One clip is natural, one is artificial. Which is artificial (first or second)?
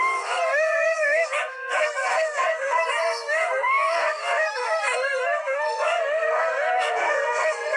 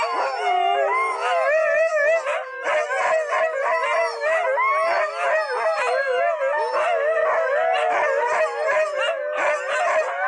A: first